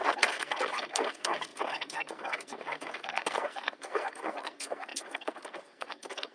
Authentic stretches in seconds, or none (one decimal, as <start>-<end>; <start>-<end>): none

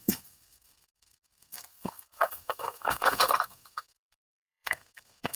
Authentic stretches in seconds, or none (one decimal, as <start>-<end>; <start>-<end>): none

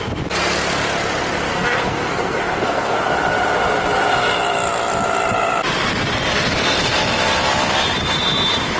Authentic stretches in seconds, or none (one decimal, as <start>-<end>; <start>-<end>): 0.0-1.5; 3.1-8.8

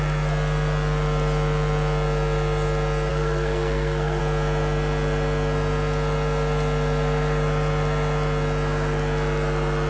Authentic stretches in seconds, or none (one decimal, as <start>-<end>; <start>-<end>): 0.0-3.1; 4.2-9.9